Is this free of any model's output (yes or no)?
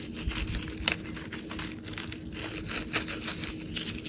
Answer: yes